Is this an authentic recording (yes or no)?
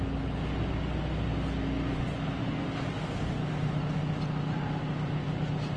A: yes